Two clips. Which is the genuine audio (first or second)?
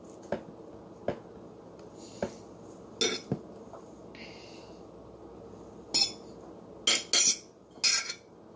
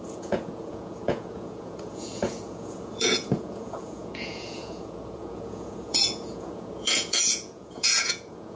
first